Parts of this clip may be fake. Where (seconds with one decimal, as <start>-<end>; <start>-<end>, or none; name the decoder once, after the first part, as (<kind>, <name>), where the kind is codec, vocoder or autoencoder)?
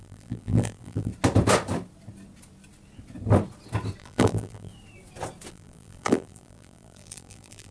0.0-1.1 (vocoder, BigVGAN v2); 4.0-4.7; 5.5-7.7